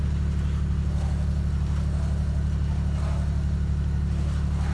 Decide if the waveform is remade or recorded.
recorded